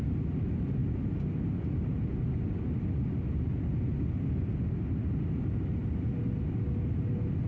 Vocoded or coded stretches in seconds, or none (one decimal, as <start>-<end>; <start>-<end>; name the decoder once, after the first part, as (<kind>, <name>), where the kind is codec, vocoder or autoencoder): none